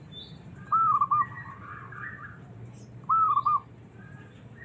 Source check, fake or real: fake